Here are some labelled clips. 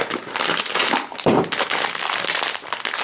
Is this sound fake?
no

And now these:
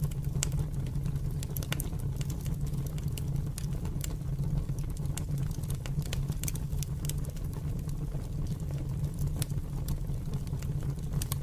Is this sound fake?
no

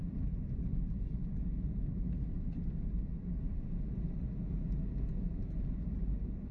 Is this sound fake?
no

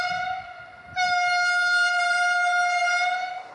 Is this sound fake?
no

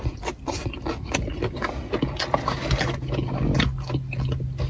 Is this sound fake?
no